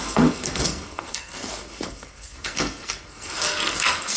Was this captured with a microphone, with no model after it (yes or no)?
no